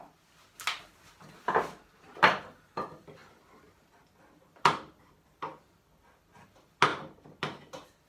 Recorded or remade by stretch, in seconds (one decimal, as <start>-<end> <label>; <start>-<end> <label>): 0.0-8.1 recorded